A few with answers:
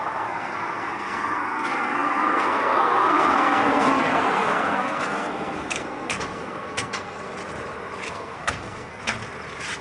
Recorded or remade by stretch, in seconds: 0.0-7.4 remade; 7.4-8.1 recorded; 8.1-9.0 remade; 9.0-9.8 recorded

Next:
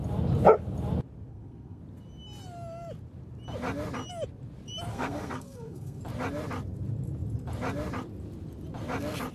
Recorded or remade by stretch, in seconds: 0.0-1.3 recorded; 1.3-1.8 remade; 1.8-4.9 recorded; 4.9-6.0 remade; 6.0-9.3 recorded

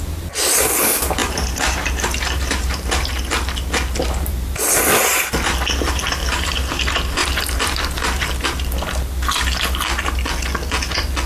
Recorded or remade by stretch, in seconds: 0.0-1.2 recorded; 1.2-3.1 remade; 3.1-6.2 recorded; 6.2-6.7 remade; 6.7-7.2 recorded; 7.2-8.3 remade; 8.3-11.3 recorded

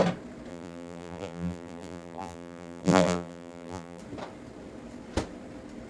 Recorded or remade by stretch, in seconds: 0.0-0.5 recorded; 0.5-4.0 remade; 4.0-5.9 recorded

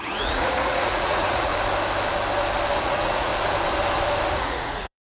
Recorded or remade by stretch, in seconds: 0.0-1.5 remade; 1.5-2.8 recorded; 2.8-3.3 remade; 3.3-4.3 recorded; 4.3-5.1 remade

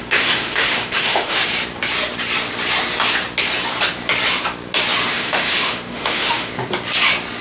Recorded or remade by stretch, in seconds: 0.0-1.4 remade; 1.4-5.1 recorded; 5.1-6.5 remade; 6.5-7.4 recorded

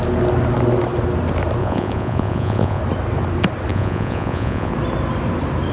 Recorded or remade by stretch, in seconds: 0.0-1.6 recorded; 1.6-2.8 remade; 2.8-3.7 recorded; 3.7-4.7 remade; 4.7-5.7 recorded

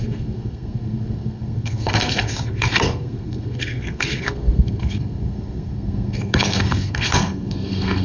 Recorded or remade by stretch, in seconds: 0.0-8.0 remade